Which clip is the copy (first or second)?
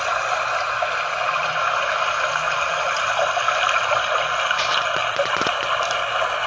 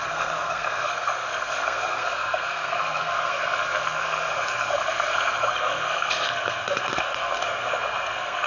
second